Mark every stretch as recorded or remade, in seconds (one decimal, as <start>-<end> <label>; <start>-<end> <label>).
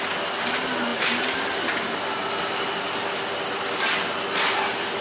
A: 0.0-5.0 recorded